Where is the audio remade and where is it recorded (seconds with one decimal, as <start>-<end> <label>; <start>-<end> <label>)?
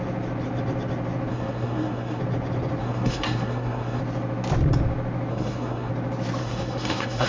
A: 0.0-1.3 recorded; 1.3-2.2 remade; 2.2-2.8 recorded; 2.8-4.0 remade; 4.0-5.3 recorded; 5.3-5.9 remade; 5.9-6.4 recorded; 6.4-7.3 remade